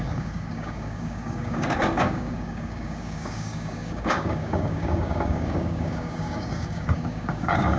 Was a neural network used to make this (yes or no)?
yes